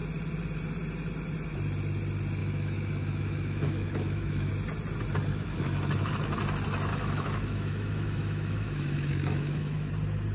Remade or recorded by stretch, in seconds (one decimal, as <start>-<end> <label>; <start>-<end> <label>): 0.0-2.4 recorded; 2.4-4.5 remade; 4.5-5.3 recorded; 5.3-5.8 remade; 5.8-6.9 recorded; 6.9-9.9 remade; 9.9-10.3 recorded